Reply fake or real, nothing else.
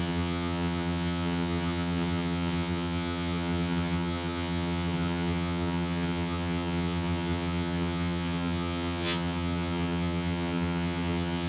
fake